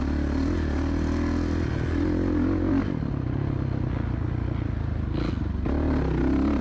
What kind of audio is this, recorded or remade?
recorded